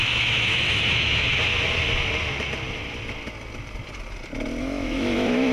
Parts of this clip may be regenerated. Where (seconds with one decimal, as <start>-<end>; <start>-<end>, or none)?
0.0-1.3; 4.6-5.5